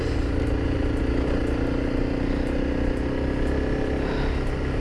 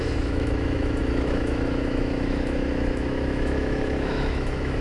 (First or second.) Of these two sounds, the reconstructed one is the second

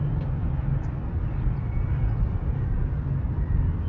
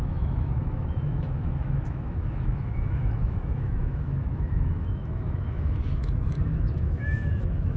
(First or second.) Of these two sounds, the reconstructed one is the second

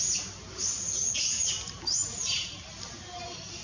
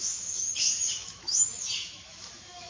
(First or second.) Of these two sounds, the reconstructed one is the second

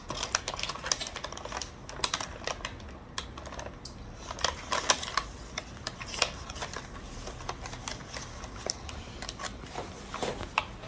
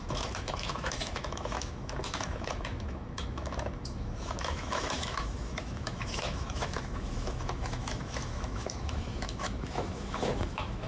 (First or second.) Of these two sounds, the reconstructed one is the second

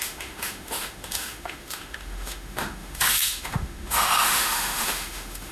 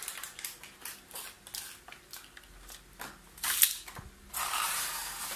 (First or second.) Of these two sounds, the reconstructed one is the first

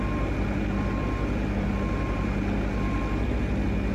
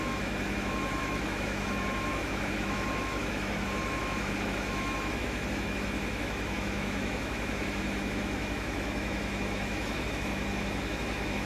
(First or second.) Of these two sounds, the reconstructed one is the second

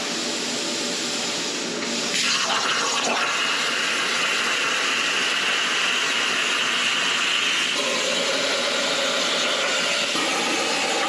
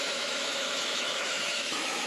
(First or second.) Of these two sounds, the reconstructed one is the second